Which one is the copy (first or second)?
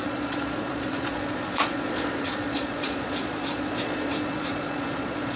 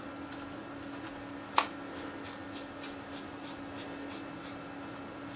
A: first